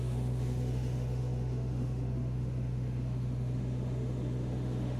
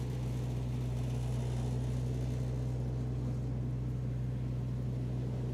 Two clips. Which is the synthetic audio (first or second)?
first